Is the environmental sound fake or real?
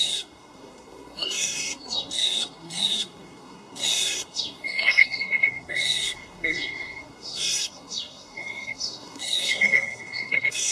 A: fake